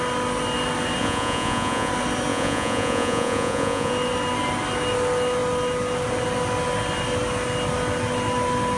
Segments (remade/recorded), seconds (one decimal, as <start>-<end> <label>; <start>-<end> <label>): 0.0-1.0 recorded; 1.0-1.9 remade; 1.9-2.3 recorded; 2.3-3.9 remade; 3.9-8.8 recorded

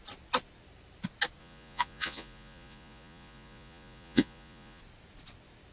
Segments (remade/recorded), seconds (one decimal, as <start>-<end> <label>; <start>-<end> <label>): 0.0-1.4 recorded; 1.4-4.8 remade; 4.8-5.7 recorded

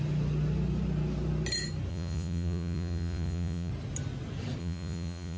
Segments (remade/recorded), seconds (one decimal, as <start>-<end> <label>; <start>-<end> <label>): 0.0-1.9 recorded; 1.9-3.7 remade; 3.7-4.6 recorded; 4.6-5.4 remade

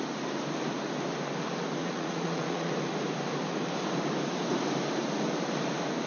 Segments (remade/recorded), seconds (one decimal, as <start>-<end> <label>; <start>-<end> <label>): 0.0-1.8 recorded; 1.8-2.7 remade; 2.7-6.1 recorded

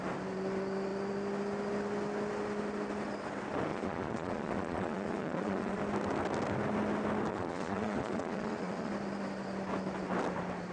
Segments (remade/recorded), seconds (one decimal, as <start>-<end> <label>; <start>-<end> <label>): 0.0-3.7 recorded; 3.7-5.8 remade; 5.8-7.3 recorded; 7.3-8.9 remade; 8.9-10.7 recorded

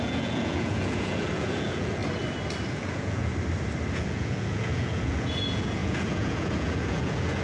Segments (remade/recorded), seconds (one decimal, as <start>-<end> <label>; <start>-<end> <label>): 0.0-2.0 remade; 2.0-2.7 recorded; 2.7-3.3 remade; 3.3-3.9 recorded; 3.9-7.4 remade

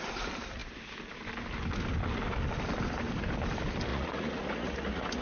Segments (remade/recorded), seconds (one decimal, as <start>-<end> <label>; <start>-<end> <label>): 0.0-3.9 recorded; 3.9-5.2 remade